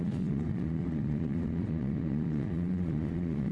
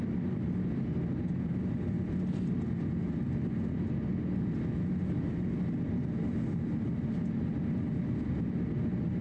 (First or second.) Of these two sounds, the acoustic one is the second